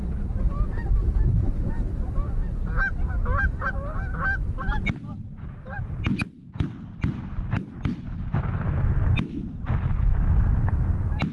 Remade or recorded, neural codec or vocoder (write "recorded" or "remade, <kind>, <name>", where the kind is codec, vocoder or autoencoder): recorded